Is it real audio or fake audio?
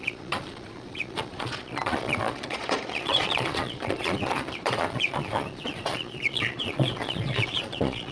fake